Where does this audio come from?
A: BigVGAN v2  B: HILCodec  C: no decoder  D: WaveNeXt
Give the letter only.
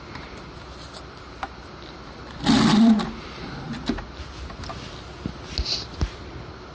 C